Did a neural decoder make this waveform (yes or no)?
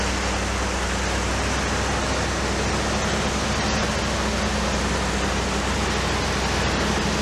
no